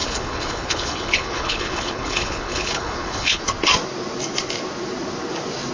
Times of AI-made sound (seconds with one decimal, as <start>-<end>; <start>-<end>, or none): 0.0-3.4